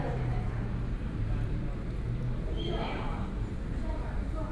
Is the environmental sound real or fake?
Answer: real